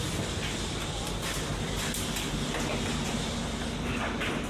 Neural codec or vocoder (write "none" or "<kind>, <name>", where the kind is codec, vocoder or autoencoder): none